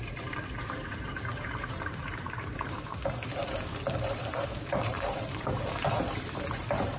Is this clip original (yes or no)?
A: no